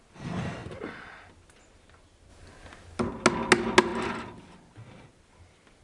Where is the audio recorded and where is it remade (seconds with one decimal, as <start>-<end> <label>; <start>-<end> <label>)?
0.0-5.8 recorded